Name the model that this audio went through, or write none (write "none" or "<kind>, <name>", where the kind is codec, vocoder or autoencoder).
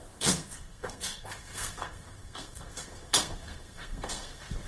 codec, SNAC